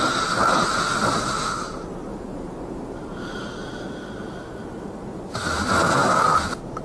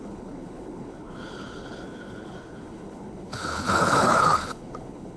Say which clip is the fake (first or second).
second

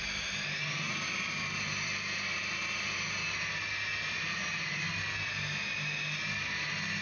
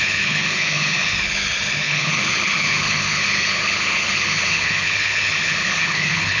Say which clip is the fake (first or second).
second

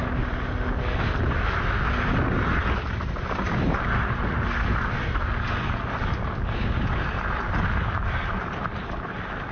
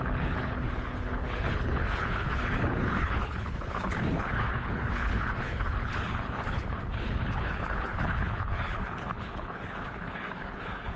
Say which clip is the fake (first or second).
second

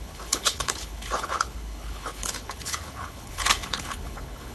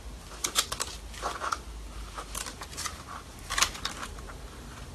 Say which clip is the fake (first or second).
first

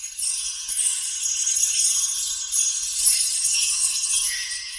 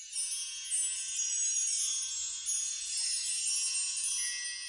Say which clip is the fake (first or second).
first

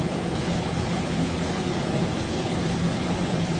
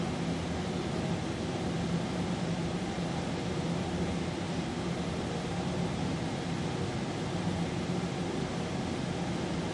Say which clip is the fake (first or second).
first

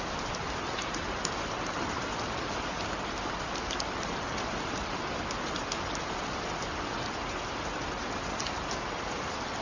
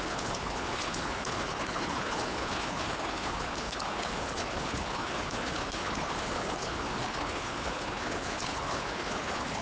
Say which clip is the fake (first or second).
second